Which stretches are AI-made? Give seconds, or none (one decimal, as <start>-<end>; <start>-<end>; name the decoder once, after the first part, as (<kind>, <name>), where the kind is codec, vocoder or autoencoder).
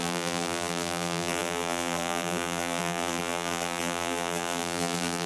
0.0-5.3 (vocoder, BigVGAN v2)